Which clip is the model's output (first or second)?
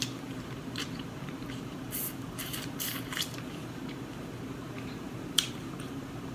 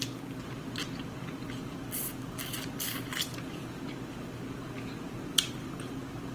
first